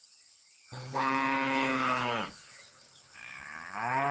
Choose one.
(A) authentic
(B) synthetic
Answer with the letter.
B